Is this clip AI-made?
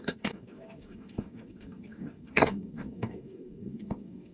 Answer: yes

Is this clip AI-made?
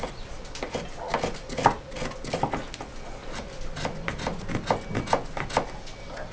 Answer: no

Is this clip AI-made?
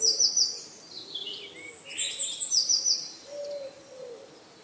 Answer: no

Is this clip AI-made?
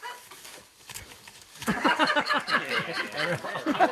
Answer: yes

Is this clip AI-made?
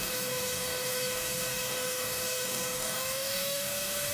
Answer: yes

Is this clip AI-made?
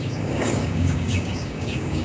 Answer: yes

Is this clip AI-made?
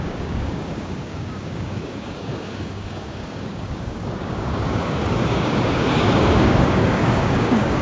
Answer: yes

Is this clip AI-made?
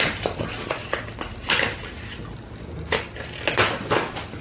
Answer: no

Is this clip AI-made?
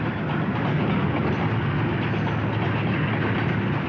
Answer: no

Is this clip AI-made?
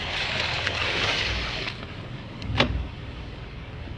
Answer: yes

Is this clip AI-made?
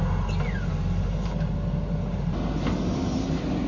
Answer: no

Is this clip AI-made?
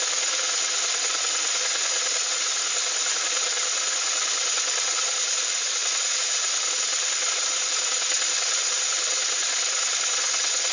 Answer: no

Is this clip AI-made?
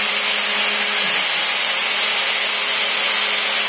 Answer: no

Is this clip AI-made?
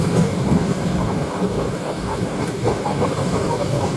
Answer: yes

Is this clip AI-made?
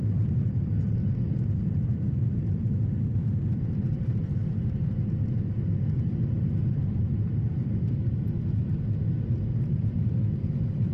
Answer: no